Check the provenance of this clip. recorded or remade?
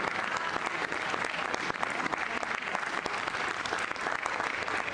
recorded